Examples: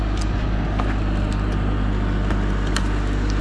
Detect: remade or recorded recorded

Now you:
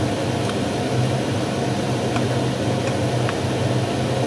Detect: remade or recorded recorded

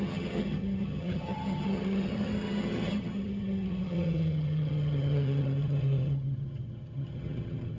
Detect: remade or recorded remade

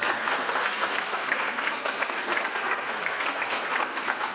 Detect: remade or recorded remade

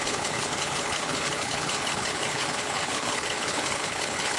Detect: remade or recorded remade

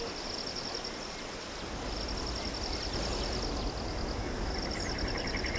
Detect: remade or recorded recorded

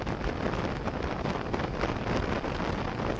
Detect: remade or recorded recorded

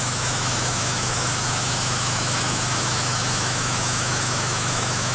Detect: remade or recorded remade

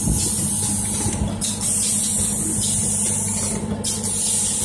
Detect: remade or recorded recorded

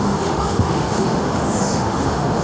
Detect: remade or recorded remade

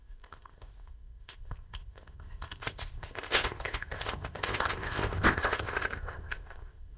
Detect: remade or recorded remade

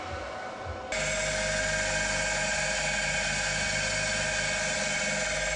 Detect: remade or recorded recorded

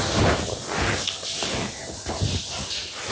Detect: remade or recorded recorded